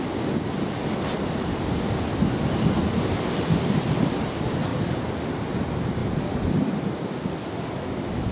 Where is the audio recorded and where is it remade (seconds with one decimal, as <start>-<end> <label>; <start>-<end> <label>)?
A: 0.0-8.3 recorded